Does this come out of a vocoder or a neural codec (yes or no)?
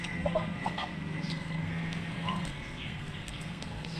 yes